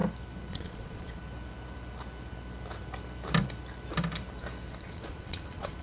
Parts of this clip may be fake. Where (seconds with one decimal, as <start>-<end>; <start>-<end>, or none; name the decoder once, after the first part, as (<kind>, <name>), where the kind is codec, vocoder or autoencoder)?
0.5-1.2 (vocoder, Vocos); 4.7-5.8